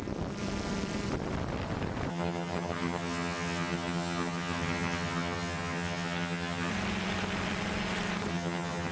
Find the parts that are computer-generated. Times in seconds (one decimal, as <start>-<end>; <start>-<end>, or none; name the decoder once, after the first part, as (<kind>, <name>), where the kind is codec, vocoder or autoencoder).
2.1-6.7 (vocoder, HiFi-GAN); 8.3-8.9